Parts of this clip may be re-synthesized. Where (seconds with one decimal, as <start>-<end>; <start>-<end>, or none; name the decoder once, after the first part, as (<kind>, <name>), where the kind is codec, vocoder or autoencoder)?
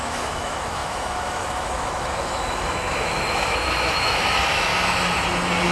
0.0-4.7 (autoencoder, DAC-VAE)